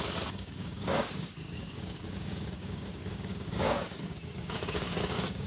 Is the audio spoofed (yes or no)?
yes